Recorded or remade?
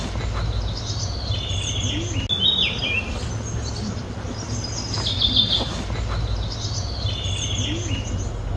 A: recorded